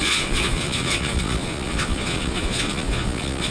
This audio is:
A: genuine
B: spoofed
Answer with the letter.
B